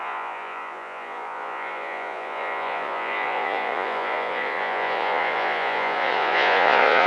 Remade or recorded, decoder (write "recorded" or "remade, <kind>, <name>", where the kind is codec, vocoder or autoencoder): remade, vocoder, Vocos